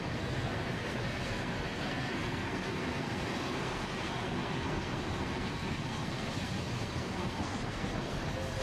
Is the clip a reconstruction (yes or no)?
yes